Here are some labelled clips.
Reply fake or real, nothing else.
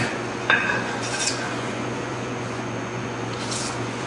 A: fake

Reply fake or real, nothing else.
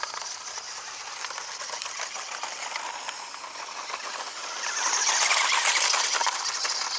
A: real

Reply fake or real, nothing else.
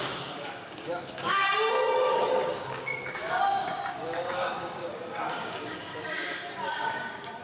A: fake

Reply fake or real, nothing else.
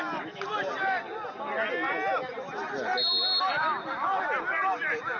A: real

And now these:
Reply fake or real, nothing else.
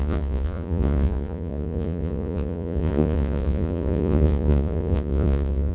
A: fake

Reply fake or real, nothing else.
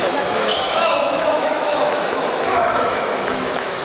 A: fake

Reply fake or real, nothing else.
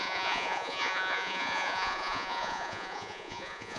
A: fake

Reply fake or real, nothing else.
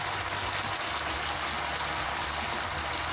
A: real